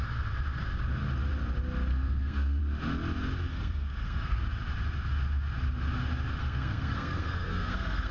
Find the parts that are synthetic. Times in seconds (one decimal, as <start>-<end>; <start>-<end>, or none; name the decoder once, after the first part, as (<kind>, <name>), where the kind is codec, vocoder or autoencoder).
1.9-2.6 (codec, SNAC); 3.5-4.4; 6.4-8.1